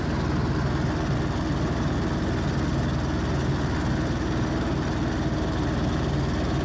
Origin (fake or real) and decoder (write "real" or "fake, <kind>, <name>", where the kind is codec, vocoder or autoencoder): real